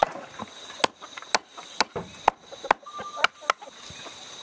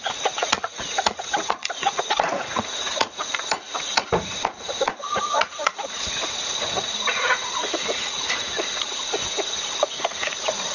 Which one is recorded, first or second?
first